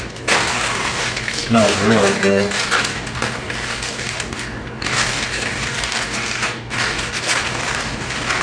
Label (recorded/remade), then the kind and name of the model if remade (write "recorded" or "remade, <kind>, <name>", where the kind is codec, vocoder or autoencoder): remade, codec, DAC